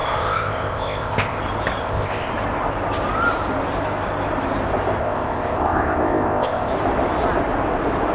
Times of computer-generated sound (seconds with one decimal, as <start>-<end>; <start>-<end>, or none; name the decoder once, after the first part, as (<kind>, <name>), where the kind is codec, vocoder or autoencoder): 0.0-1.4 (codec, ZipCodec); 1.8-2.3; 5.0-6.7

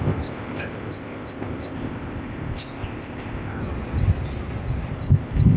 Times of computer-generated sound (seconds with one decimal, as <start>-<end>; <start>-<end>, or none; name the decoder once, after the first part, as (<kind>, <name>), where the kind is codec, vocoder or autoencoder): 0.0-3.6 (codec, ZipCodec); 4.9-5.6

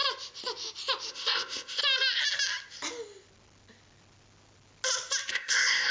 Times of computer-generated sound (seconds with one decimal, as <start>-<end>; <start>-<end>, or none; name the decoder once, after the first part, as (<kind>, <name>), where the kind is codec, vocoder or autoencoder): 1.1-1.8 (codec, ZipCodec); 5.3-5.9

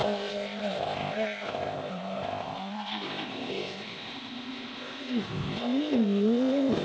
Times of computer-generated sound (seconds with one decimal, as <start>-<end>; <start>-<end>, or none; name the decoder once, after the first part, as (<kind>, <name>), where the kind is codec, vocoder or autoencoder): 0.0-6.8 (codec, ZipCodec)